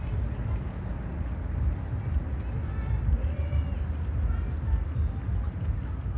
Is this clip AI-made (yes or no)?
no